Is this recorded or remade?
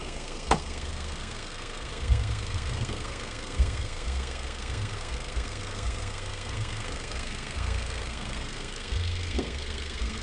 remade